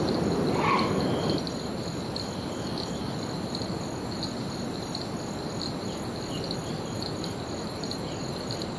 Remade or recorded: recorded